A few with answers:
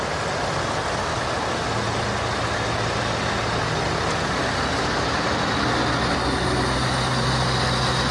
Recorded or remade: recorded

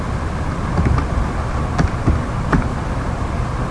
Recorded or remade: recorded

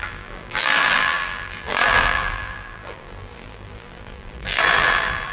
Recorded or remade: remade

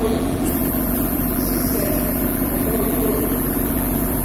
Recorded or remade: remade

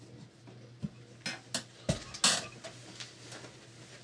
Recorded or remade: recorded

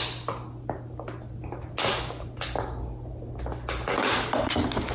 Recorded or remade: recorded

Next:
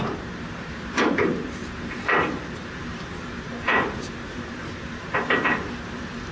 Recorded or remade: remade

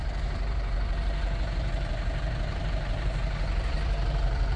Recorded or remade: remade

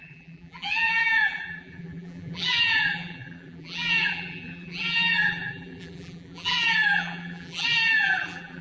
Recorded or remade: remade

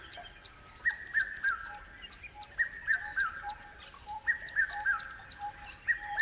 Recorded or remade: recorded